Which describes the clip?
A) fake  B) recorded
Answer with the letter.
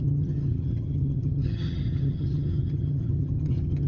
A